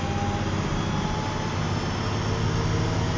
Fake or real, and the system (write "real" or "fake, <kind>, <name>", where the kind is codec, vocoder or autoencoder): real